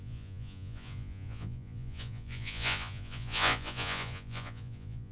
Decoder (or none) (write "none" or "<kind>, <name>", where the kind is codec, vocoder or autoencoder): vocoder, Vocos